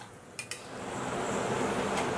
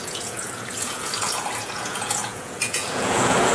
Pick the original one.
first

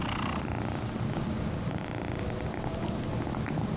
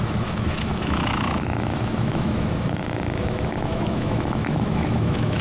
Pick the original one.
first